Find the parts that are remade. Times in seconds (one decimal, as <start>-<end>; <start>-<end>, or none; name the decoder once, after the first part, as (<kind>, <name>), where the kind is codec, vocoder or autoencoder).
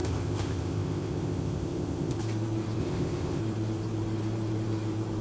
0.0-2.2 (codec, ZipCodec); 2.8-3.4